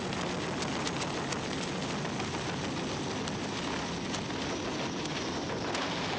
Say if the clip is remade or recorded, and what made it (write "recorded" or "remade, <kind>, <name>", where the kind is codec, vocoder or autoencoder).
recorded